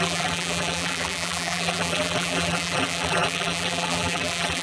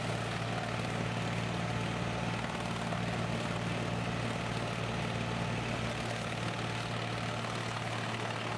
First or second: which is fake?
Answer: first